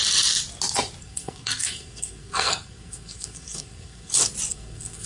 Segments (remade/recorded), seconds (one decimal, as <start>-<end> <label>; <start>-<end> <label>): 0.0-1.0 recorded; 1.0-4.1 remade; 4.1-4.5 recorded; 4.5-5.1 remade